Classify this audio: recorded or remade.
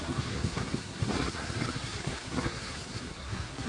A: remade